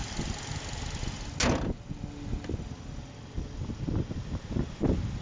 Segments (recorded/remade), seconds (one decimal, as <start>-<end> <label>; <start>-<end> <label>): 0.0-5.2 recorded